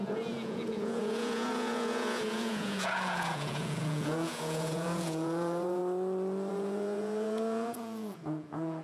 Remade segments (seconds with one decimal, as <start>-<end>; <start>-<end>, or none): 0.0-5.8; 6.5-8.8